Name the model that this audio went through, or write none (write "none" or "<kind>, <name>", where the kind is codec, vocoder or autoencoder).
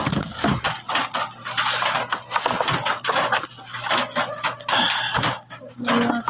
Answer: none